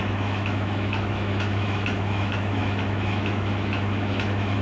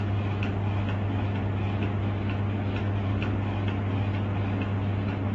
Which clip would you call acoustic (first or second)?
second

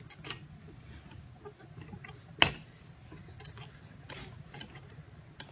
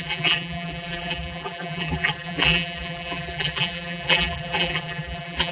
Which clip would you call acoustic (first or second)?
first